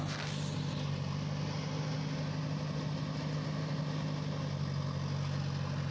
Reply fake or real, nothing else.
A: real